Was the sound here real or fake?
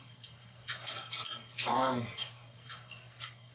fake